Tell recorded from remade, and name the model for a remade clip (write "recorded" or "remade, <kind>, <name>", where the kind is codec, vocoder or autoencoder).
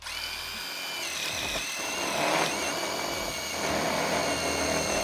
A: recorded